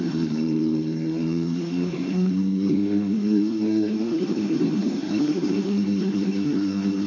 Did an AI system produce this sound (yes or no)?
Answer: yes